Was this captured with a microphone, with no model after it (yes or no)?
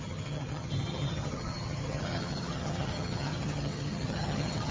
no